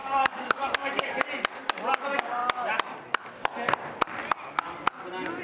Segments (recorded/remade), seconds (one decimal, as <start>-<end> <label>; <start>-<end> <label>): 0.0-1.2 remade; 1.2-5.4 recorded